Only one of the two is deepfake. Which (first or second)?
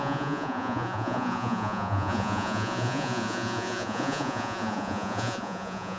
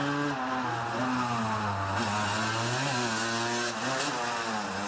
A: first